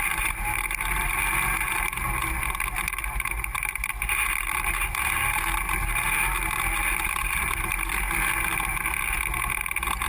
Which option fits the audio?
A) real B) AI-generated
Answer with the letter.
A